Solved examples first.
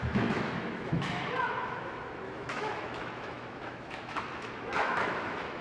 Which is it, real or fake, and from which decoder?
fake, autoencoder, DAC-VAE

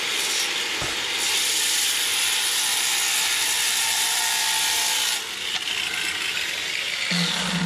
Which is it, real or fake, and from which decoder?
real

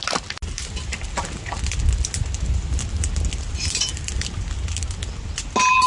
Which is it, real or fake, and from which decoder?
real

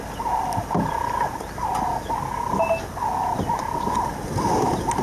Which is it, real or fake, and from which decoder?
real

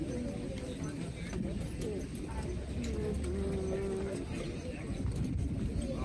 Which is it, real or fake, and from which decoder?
real